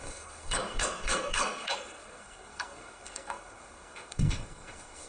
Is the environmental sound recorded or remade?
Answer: remade